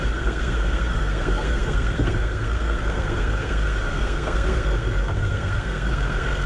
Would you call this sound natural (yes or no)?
no